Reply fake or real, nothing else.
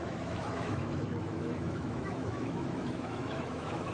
fake